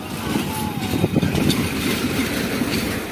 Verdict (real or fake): fake